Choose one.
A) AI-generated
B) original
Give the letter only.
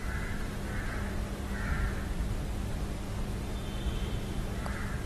A